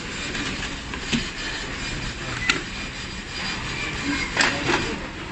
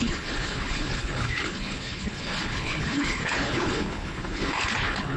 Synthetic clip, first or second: second